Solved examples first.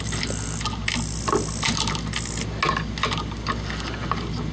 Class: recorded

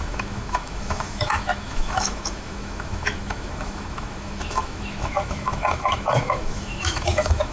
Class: remade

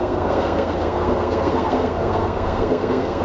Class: remade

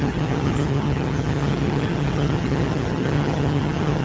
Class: remade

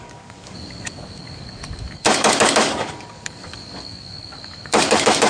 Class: remade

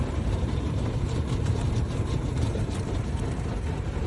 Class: remade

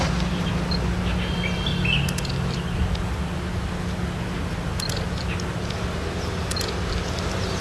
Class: recorded